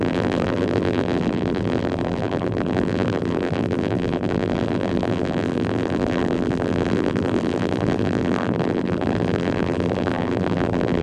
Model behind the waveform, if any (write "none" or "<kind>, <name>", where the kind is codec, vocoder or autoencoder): vocoder, BigVGAN v2